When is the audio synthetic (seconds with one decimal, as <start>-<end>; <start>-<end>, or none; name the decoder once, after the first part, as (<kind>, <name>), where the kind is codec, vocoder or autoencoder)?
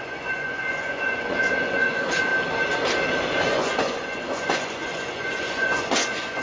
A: 0.0-2.3 (vocoder, Vocos); 3.4-6.4